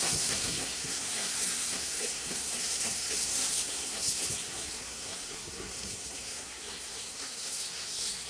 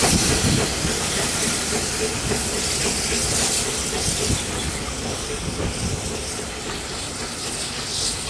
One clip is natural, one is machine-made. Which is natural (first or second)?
second